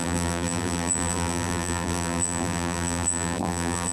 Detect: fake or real fake